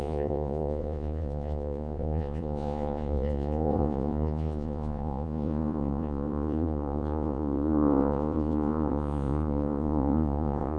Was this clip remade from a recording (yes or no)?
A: yes